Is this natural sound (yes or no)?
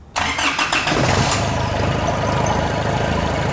yes